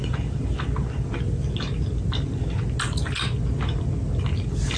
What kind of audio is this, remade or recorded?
recorded